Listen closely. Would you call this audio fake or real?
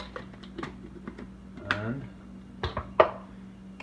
real